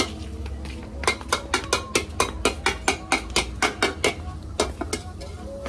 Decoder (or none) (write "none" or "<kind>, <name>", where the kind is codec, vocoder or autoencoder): none